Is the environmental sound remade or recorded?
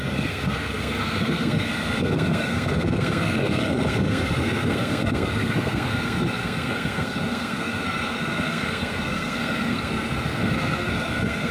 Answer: remade